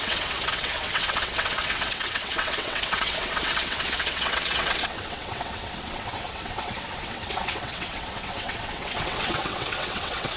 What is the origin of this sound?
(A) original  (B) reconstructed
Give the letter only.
B